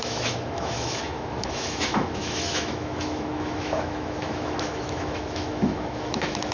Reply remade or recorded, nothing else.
remade